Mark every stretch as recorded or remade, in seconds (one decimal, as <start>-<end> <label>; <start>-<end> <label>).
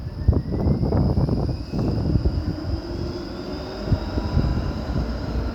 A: 0.0-1.6 remade; 1.6-4.5 recorded; 4.5-5.5 remade